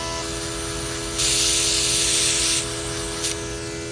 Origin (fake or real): real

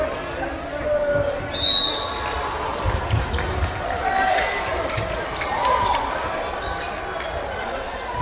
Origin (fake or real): real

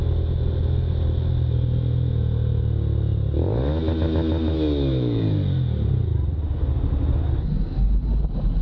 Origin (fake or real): real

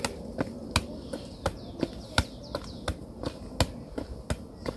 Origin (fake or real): real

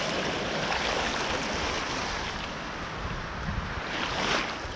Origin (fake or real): real